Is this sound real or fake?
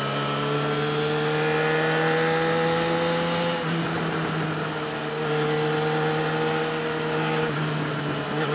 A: real